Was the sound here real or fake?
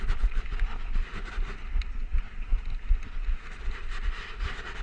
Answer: real